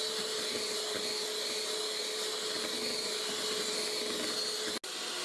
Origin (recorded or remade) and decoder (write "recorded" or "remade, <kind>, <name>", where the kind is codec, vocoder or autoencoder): recorded